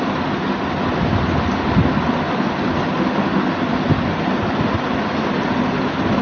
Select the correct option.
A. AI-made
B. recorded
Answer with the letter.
B